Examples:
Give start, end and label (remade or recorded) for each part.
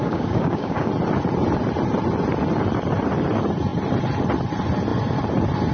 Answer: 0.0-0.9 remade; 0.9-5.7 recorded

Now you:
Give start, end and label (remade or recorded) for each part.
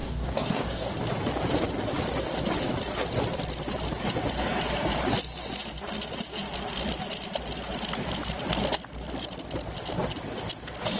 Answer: 0.0-0.9 remade; 0.9-11.0 recorded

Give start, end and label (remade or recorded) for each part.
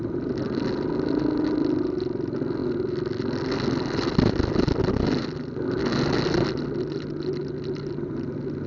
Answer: 0.0-8.7 recorded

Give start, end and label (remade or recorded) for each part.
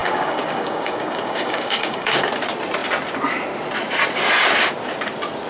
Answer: 0.0-2.3 remade; 2.3-5.5 recorded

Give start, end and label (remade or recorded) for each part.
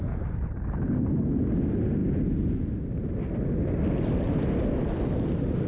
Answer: 0.0-5.7 recorded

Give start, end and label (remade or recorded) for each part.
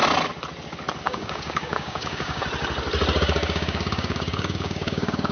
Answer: 0.0-1.0 recorded; 1.0-2.4 remade; 2.4-3.2 recorded; 3.2-5.3 remade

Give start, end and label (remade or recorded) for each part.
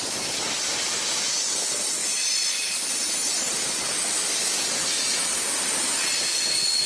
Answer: 0.0-6.9 recorded